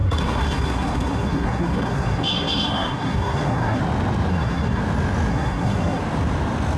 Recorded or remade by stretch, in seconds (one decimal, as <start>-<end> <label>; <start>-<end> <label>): 0.0-3.8 remade; 3.8-4.3 recorded; 4.3-4.8 remade; 4.8-5.3 recorded; 5.3-6.0 remade; 6.0-6.8 recorded